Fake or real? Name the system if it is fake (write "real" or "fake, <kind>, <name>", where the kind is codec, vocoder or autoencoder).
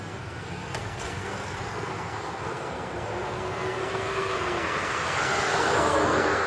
fake, codec, SNAC